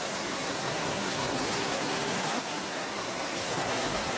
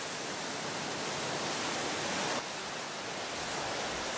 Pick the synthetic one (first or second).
first